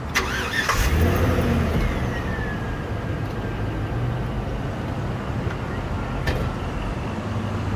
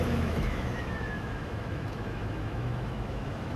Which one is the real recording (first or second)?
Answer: first